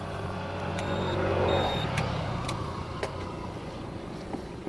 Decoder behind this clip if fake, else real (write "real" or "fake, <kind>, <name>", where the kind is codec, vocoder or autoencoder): fake, vocoder, Vocos